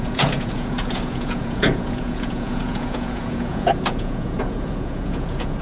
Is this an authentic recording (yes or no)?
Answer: no